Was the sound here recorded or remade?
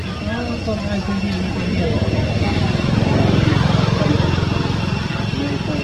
recorded